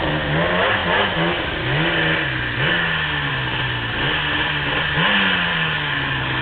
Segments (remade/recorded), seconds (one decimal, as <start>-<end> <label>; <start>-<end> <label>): 0.0-5.5 recorded; 5.5-6.4 remade